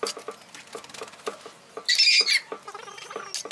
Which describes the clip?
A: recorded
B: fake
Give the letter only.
A